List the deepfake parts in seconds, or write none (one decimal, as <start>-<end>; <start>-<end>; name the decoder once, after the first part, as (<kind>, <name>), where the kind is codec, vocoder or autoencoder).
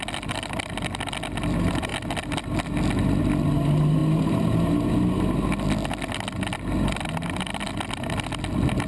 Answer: none